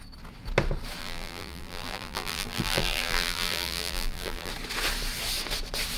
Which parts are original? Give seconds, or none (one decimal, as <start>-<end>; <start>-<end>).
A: 0.0-1.0; 4.5-6.0